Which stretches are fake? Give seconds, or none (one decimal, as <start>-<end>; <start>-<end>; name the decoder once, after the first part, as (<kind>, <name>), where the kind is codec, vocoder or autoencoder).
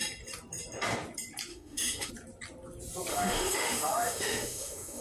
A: 1.5-2.1 (autoencoder, DAC-VAE); 3.1-5.0